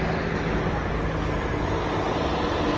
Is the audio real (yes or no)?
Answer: yes